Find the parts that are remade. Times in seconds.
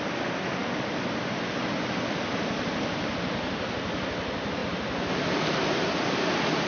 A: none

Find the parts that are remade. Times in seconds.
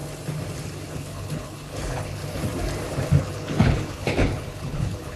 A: 0.9-2.2; 3.2-5.2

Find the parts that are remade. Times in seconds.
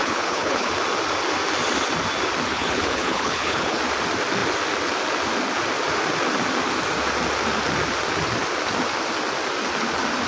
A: 0.0-0.7; 2.5-3.8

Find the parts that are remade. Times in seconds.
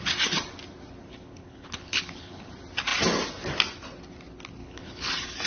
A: 1.1-2.5; 4.6-5.1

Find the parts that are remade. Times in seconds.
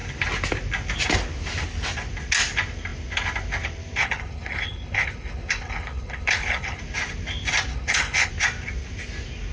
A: 4.0-6.8; 7.7-8.3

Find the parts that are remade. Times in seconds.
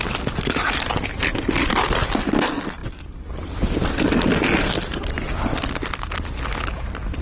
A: none